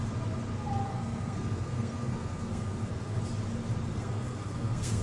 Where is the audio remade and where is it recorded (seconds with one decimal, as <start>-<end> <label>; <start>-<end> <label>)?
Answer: 0.0-0.9 recorded; 0.9-3.2 remade; 3.2-3.9 recorded; 3.9-5.0 remade